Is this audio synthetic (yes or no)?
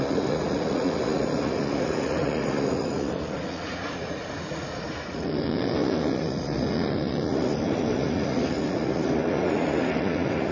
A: yes